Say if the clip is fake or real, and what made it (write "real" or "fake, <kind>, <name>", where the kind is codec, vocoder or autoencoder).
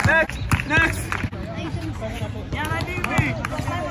real